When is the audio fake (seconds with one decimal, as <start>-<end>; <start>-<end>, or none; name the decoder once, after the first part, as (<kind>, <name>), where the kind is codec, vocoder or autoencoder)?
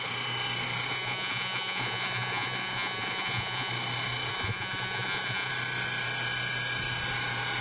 0.9-3.7 (vocoder, Vocos); 4.3-5.5